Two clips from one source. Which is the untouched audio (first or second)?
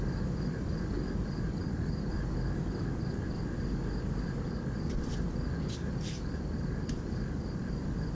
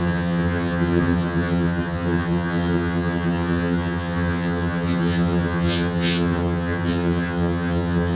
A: first